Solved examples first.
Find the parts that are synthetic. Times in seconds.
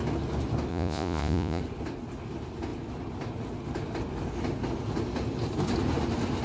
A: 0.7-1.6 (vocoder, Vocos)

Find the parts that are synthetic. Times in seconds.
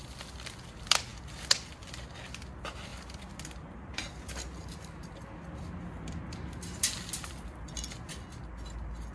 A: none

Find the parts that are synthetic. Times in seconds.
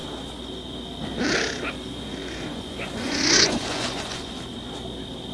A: 2.2-4.4 (vocoder, Vocos)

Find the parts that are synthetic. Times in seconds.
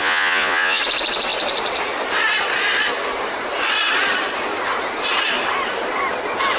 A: 0.0-0.8 (vocoder, Vocos)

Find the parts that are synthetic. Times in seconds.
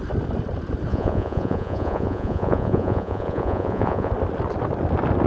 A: 0.9-4.1 (vocoder, Vocos)